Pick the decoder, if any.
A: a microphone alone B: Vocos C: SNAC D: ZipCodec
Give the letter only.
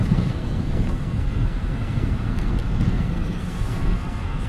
C